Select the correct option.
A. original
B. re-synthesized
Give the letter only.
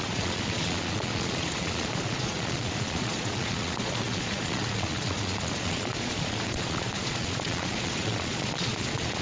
B